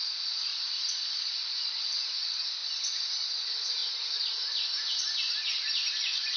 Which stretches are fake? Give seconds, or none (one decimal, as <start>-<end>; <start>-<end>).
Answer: none